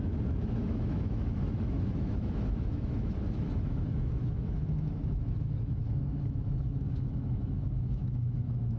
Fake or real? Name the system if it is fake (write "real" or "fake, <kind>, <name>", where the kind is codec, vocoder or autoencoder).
fake, autoencoder, DAC-VAE